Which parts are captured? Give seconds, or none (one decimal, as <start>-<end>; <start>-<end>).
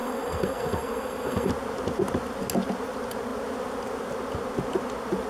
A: 1.5-5.3